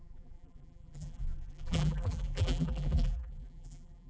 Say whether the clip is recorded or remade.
remade